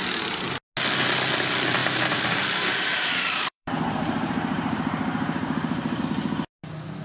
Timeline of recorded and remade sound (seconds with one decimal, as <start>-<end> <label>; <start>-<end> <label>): 0.0-1.8 recorded; 1.8-6.0 remade; 6.0-7.0 recorded